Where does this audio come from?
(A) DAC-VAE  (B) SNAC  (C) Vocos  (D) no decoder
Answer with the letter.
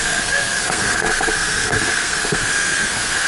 B